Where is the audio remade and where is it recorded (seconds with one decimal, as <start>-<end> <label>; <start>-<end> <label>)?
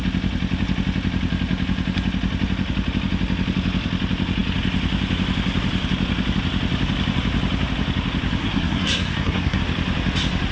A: 0.0-8.4 recorded; 8.4-9.6 remade; 9.6-10.5 recorded